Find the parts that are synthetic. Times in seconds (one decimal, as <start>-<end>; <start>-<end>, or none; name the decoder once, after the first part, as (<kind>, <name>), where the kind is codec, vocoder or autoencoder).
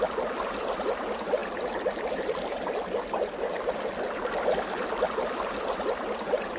none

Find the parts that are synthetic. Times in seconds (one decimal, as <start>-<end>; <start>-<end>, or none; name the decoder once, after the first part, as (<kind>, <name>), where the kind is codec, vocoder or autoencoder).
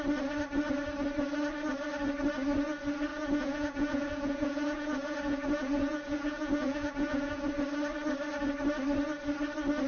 3.1-7.5 (vocoder, Vocos)